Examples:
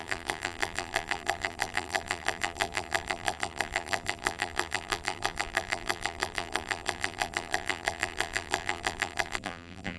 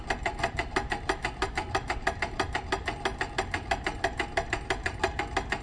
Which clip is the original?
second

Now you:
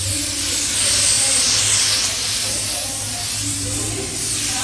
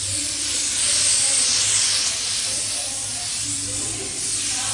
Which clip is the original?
first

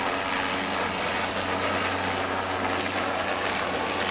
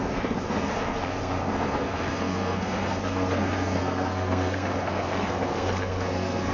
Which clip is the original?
first